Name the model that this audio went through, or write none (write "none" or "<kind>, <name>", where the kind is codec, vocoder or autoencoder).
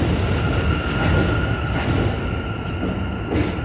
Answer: none